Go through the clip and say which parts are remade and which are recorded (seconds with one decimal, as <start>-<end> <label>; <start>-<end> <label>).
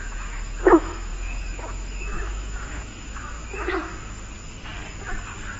0.0-3.9 remade; 3.9-5.6 recorded